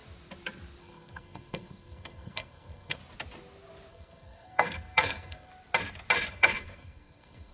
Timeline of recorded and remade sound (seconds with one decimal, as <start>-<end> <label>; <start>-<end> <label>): 0.0-0.8 recorded; 0.8-3.0 remade; 3.0-3.9 recorded; 3.9-5.5 remade; 5.5-6.3 recorded; 6.3-7.5 remade